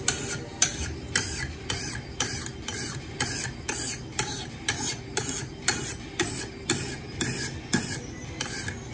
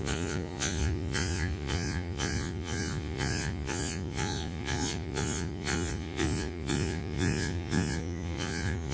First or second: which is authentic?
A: first